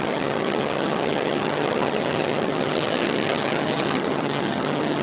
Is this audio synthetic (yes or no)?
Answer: yes